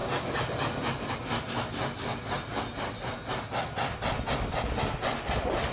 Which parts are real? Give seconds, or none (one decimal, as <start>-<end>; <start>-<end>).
0.0-5.7